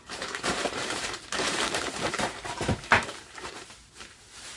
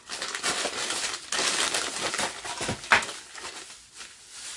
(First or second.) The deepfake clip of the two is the first